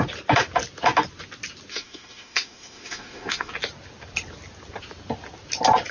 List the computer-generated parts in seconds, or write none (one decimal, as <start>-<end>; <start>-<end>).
1.7-3.5